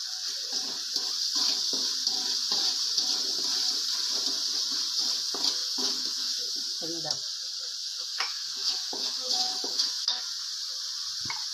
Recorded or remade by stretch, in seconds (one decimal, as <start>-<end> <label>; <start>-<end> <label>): 0.0-5.6 recorded; 5.6-6.5 remade; 6.5-7.8 recorded; 7.8-10.2 remade; 10.2-11.5 recorded

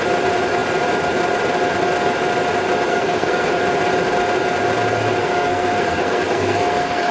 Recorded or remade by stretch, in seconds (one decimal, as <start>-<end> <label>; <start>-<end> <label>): 0.0-2.9 recorded; 2.9-3.5 remade; 3.5-5.2 recorded; 5.2-7.1 remade